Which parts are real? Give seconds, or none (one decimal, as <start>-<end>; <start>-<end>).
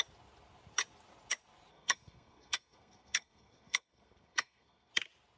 0.0-1.7; 4.9-5.4